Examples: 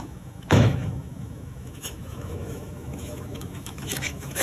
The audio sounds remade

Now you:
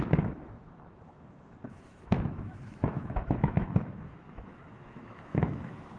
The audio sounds remade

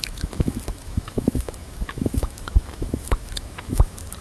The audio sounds remade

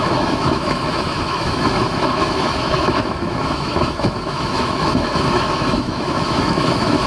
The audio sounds remade